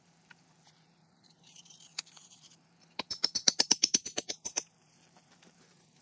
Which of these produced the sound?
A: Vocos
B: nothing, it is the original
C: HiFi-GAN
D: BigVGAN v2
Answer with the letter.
D